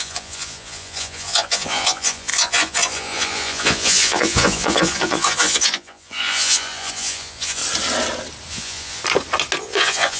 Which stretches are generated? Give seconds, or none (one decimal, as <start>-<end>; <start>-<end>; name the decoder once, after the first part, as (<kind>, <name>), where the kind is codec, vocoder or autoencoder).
0.0-7.6 (vocoder, Vocos); 8.5-9.0; 9.6-10.2